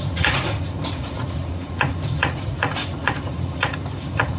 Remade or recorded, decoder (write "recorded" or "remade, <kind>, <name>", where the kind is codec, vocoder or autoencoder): remade, vocoder, Vocos